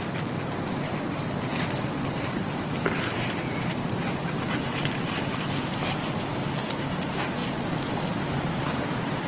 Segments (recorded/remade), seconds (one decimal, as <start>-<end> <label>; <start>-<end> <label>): 0.0-3.7 recorded; 3.7-4.7 remade; 4.7-9.3 recorded